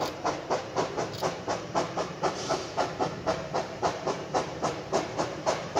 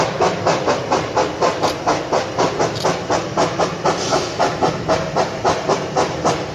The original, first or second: second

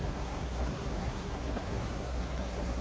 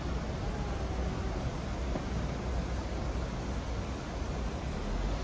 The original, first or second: second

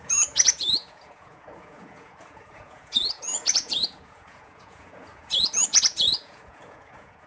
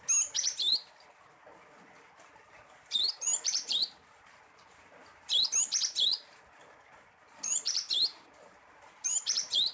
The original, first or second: second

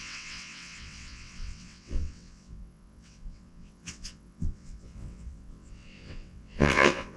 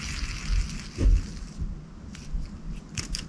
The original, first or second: second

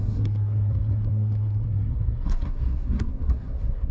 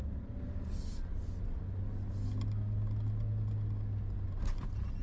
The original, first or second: second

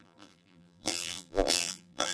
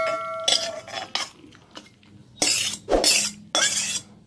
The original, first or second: second